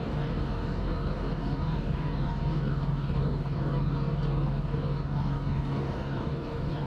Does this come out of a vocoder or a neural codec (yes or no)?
yes